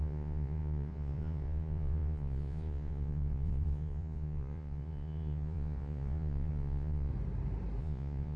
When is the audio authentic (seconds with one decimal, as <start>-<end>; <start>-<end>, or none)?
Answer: 7.1-7.8